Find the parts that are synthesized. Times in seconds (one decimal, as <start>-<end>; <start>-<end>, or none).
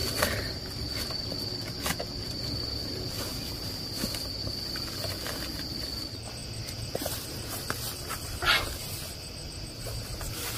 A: 0.0-4.4; 5.6-6.4; 8.2-8.8; 10.2-10.6